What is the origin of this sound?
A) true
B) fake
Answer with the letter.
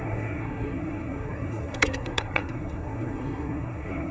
B